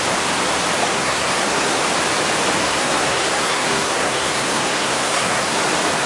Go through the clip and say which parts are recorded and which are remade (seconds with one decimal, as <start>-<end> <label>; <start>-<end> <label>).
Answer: 0.0-0.9 recorded; 0.9-1.8 remade; 1.8-2.6 recorded; 2.6-5.6 remade; 5.6-6.1 recorded